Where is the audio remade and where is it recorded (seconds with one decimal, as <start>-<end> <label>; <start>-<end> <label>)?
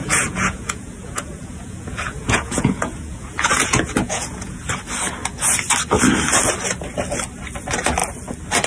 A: 0.0-4.7 remade; 4.7-8.7 recorded